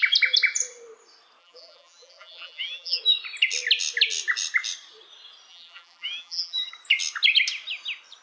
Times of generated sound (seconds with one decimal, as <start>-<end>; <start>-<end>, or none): 1.4-3.0; 5.5-6.7